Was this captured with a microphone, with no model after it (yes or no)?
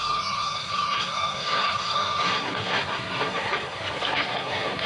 no